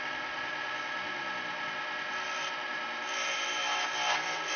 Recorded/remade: recorded